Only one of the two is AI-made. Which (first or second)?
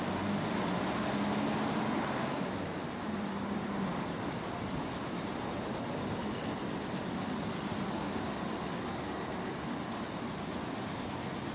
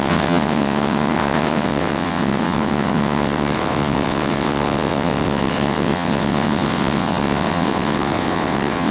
second